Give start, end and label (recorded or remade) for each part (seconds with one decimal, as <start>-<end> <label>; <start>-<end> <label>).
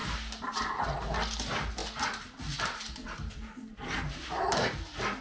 0.0-5.2 recorded